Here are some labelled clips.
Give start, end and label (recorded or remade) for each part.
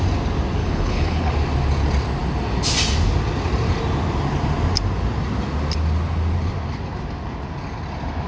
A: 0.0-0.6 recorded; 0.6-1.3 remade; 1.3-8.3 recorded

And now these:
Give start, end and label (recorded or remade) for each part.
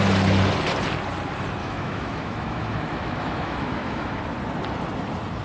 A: 0.0-1.6 recorded; 1.6-4.2 remade; 4.2-5.4 recorded